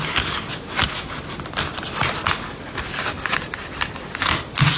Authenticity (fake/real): real